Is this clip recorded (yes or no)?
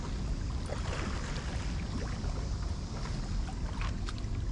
yes